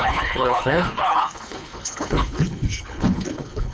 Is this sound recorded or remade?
remade